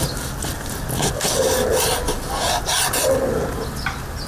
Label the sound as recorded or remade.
recorded